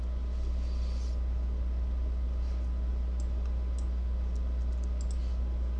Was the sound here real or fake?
real